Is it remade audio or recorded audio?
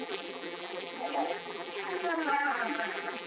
remade